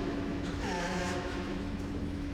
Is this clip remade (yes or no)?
yes